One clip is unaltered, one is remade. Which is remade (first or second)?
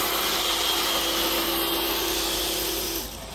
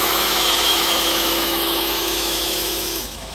second